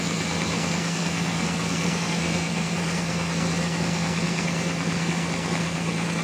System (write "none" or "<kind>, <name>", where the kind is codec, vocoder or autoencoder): codec, SNAC